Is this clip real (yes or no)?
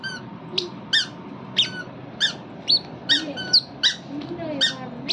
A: yes